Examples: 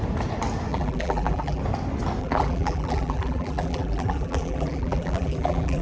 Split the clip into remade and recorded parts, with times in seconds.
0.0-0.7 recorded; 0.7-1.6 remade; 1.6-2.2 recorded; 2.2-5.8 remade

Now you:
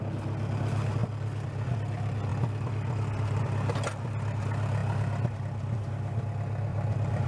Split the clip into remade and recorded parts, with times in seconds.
0.0-1.0 recorded; 1.0-1.7 remade; 1.7-6.7 recorded; 6.7-7.3 remade

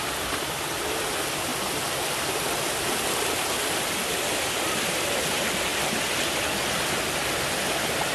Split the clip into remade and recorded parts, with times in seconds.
0.0-8.1 recorded